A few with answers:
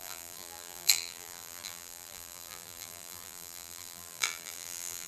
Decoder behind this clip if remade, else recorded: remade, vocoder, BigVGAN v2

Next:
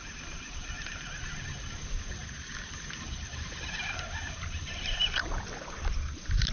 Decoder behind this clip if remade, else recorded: recorded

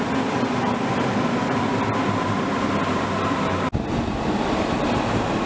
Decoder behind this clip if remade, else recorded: recorded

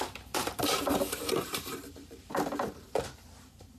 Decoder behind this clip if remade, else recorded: remade, vocoder, BigVGAN v2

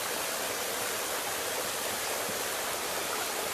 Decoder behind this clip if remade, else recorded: recorded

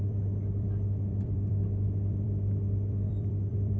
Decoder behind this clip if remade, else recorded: remade, vocoder, BigVGAN v2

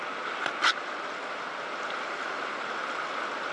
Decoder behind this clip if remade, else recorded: recorded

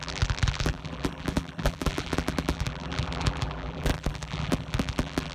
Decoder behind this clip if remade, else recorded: remade, vocoder, BigVGAN v2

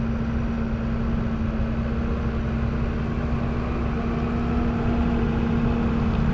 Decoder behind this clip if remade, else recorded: recorded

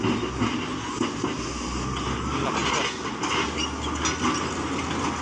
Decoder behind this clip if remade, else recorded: recorded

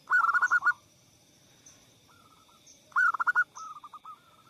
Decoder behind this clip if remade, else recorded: remade, vocoder, BigVGAN v2